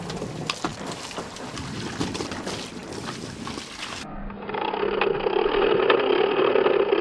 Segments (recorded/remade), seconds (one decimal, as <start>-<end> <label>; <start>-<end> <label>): 0.0-0.7 recorded; 0.7-2.0 remade; 2.0-7.0 recorded